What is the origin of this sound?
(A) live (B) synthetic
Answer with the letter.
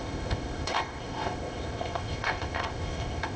B